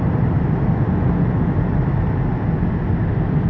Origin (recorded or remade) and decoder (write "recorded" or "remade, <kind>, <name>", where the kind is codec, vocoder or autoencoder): recorded